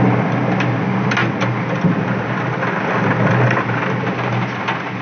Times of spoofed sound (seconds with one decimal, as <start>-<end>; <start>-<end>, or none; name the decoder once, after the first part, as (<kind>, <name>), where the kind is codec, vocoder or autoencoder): none